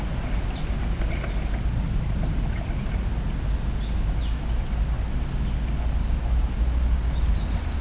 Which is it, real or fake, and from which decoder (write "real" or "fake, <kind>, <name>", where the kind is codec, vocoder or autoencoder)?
real